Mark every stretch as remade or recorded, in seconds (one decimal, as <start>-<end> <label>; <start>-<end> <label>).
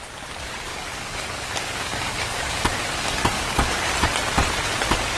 0.0-0.7 recorded; 0.7-3.8 remade; 3.8-5.2 recorded